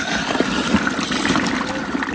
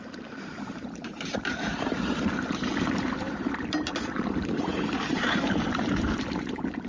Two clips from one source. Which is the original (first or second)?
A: first